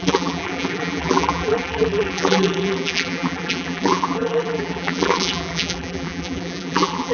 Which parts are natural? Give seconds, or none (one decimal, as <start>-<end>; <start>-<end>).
none